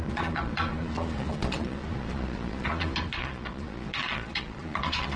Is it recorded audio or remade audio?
remade